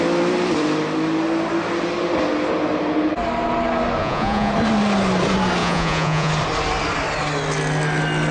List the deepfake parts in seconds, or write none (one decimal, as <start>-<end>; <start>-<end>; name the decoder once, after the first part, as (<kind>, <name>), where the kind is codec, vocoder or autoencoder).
4.0-4.5 (vocoder, Vocos); 5.6-6.3